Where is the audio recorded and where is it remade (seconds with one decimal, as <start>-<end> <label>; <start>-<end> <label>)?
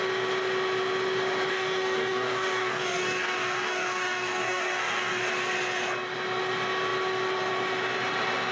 0.0-1.5 recorded; 1.5-5.3 remade; 5.3-8.5 recorded